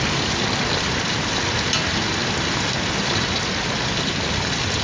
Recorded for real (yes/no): yes